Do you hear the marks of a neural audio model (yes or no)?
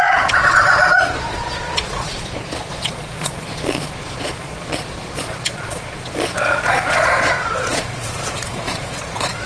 yes